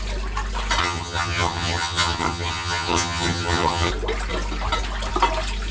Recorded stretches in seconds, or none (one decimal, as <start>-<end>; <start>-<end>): 0.0-0.8; 3.9-5.7